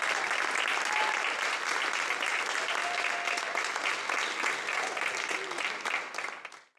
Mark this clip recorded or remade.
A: recorded